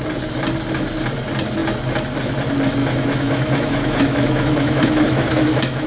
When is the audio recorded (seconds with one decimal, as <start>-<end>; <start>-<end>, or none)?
0.0-2.8